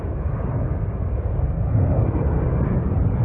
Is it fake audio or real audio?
real